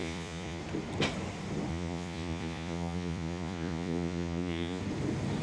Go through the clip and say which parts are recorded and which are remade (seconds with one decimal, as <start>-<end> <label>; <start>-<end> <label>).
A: 0.0-0.6 remade; 0.6-1.7 recorded; 1.7-4.8 remade; 4.8-5.4 recorded